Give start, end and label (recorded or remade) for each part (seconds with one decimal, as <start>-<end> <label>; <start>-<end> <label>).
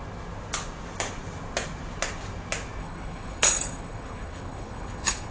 0.0-2.8 recorded; 2.8-5.3 remade